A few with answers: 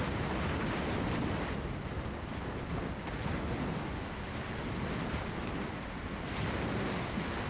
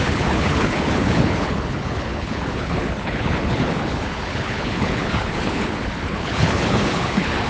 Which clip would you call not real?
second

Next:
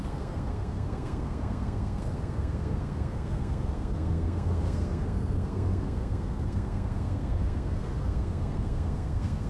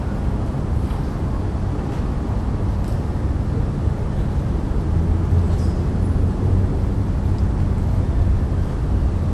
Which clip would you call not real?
first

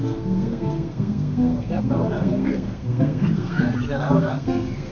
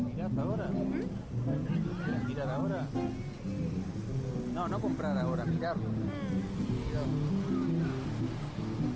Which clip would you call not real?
first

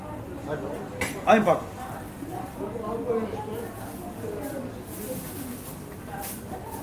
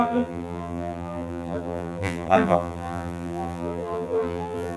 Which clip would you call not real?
second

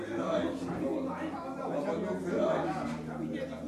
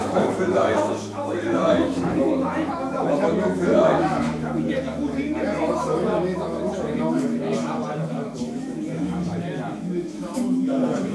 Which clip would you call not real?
second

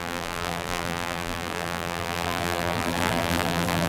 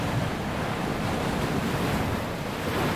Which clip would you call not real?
first